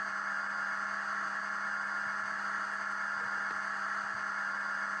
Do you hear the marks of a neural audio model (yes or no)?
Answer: no